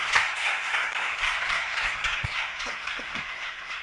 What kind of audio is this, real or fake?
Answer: fake